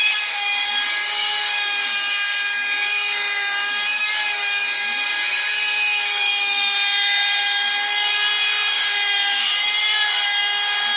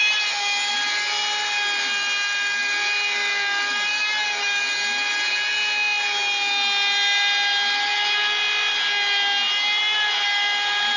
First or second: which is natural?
second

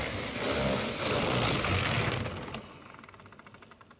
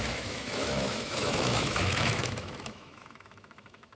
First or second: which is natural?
first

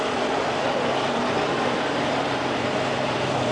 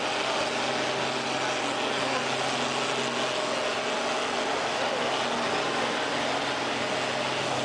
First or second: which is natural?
second